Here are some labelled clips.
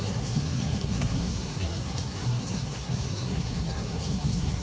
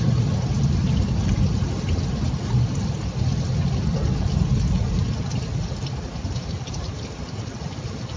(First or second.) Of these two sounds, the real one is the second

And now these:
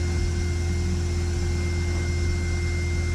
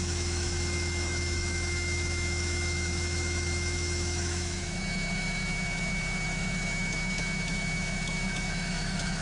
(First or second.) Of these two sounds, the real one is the first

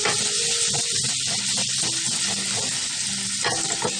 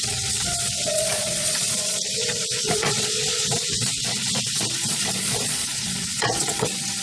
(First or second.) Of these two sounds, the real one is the first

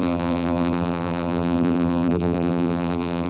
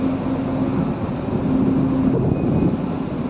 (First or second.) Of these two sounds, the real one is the second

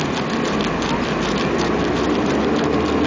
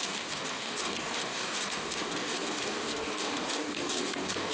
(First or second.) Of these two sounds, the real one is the first